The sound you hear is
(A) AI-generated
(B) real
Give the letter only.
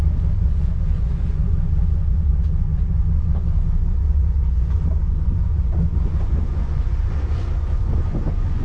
A